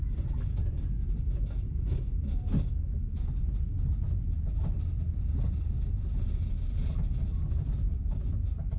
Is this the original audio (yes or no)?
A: yes